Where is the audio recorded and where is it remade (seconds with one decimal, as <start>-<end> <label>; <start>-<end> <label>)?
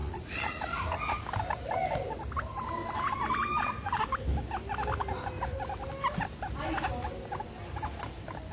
0.0-1.2 remade; 1.2-3.5 recorded; 3.5-4.0 remade; 4.0-8.5 recorded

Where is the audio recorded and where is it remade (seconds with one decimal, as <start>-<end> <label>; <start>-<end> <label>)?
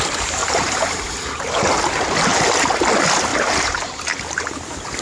0.0-0.4 recorded; 0.4-1.1 remade; 1.1-3.3 recorded; 3.3-4.0 remade; 4.0-5.0 recorded